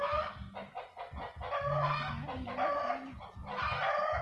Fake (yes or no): no